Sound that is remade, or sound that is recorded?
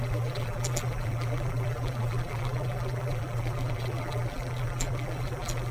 remade